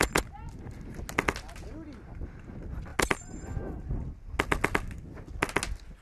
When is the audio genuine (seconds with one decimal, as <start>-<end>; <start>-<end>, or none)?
0.0-6.0